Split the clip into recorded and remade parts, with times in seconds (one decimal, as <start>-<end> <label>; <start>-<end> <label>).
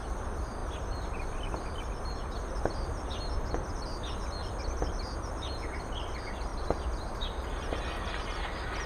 0.0-0.6 recorded; 0.6-3.7 remade; 3.7-6.5 recorded; 6.5-7.1 remade; 7.1-8.9 recorded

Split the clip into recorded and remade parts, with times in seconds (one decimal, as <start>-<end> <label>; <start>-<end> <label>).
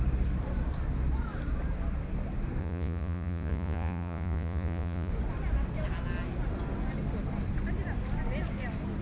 0.0-2.6 recorded; 2.6-5.1 remade; 5.1-9.0 recorded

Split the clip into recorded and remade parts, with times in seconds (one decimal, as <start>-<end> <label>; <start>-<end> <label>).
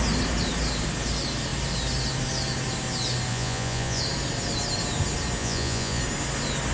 0.0-3.3 recorded; 3.3-4.0 remade; 4.0-5.4 recorded; 5.4-6.0 remade; 6.0-6.7 recorded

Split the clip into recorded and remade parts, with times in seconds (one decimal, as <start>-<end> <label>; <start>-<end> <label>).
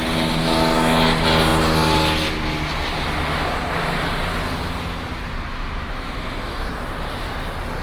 0.0-5.5 recorded; 5.5-6.7 remade; 6.7-7.8 recorded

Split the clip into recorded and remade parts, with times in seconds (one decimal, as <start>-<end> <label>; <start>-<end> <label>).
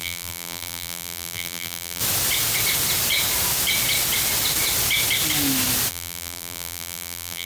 0.0-2.0 remade; 2.0-5.9 recorded; 5.9-7.4 remade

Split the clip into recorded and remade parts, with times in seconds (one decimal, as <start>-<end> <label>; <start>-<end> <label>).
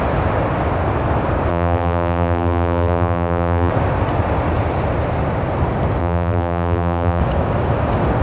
0.0-1.5 recorded; 1.5-3.7 remade; 3.7-6.0 recorded; 6.0-7.2 remade; 7.2-8.2 recorded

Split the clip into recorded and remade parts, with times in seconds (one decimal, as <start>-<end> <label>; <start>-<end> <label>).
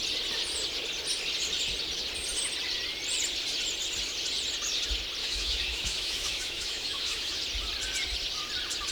0.0-5.2 recorded; 5.2-7.4 remade; 7.4-8.9 recorded